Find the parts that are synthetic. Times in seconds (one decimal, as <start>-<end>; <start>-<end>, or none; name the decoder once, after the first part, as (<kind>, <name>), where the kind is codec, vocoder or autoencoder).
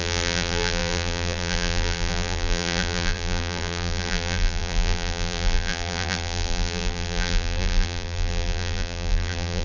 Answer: 0.0-9.6 (vocoder, BigVGAN v2)